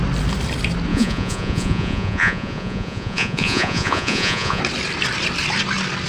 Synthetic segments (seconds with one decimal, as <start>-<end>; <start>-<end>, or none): 0.9-4.6